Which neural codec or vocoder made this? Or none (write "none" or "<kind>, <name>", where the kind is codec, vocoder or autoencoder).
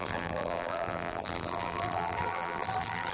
vocoder, BigVGAN v2